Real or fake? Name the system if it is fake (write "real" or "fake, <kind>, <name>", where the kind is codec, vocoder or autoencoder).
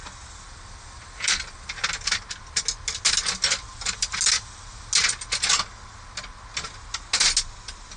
real